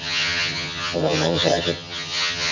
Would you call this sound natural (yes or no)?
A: no